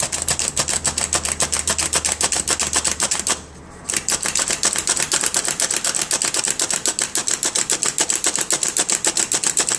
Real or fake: real